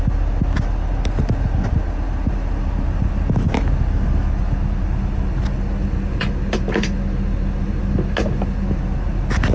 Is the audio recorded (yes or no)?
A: yes